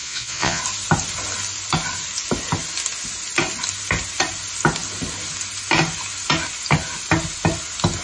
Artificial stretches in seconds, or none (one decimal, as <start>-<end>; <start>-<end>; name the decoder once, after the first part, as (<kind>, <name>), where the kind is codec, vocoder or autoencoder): 0.0-0.6 (vocoder, Vocos)